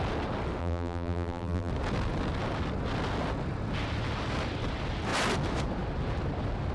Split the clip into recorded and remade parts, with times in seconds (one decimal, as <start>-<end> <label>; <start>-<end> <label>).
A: 0.0-0.6 recorded; 0.6-1.7 remade; 1.7-6.7 recorded